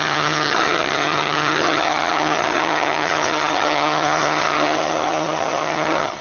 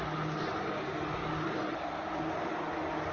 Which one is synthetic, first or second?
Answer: first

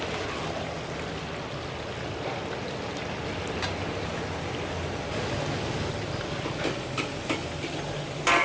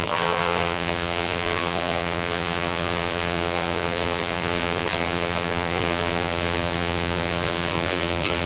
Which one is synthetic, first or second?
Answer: second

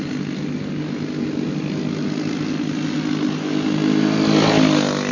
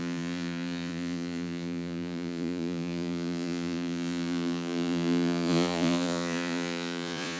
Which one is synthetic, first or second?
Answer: second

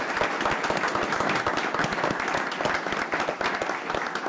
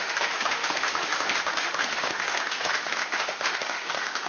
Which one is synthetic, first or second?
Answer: second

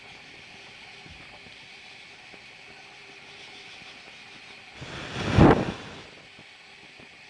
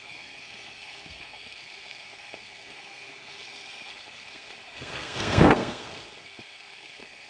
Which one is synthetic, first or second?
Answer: second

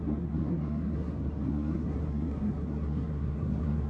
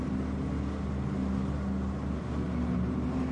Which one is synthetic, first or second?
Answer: first